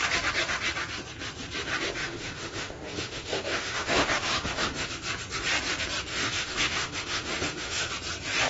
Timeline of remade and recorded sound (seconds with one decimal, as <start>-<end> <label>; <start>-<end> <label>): 0.0-2.0 recorded; 2.0-4.9 remade; 4.9-6.1 recorded; 6.1-7.9 remade; 7.9-8.5 recorded